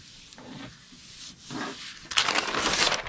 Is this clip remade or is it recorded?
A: recorded